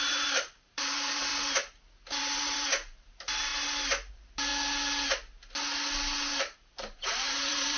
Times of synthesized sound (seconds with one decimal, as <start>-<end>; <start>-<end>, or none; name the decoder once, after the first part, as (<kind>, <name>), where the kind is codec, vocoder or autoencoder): 0.0-1.3 (vocoder, BigVGAN v2); 2.2-3.5; 4.1-4.5; 6.4-7.8